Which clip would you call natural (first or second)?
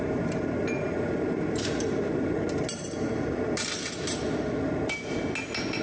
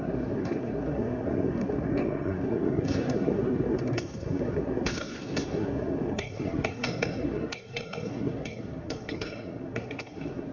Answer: first